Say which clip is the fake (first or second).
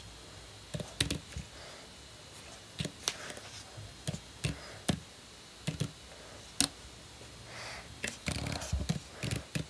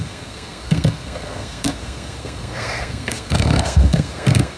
second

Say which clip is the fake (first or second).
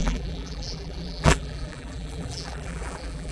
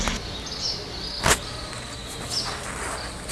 first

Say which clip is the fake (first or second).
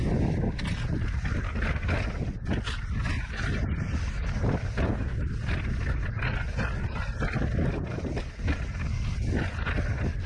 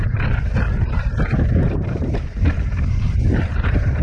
second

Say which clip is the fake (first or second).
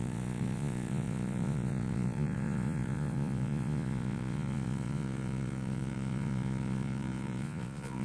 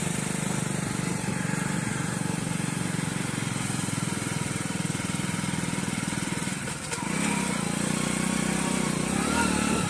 first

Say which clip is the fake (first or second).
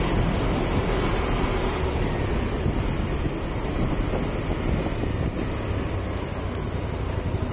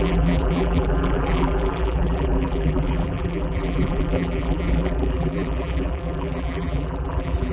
second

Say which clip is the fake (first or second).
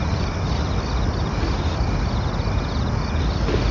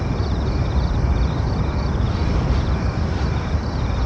second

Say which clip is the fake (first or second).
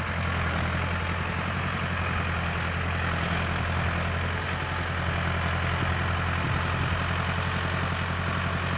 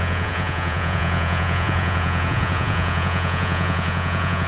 second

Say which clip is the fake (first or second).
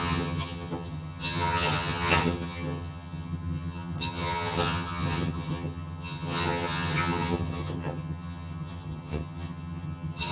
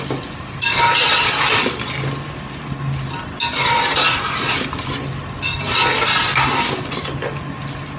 first